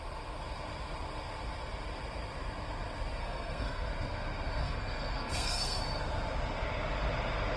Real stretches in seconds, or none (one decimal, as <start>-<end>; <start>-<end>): 0.0-3.2; 3.9-4.6; 5.8-7.6